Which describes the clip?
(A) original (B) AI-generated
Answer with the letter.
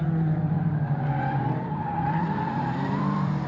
B